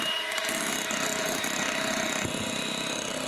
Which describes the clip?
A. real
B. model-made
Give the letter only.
A